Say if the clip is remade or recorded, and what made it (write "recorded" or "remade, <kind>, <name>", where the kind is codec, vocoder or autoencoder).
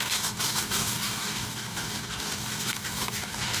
remade, codec, DAC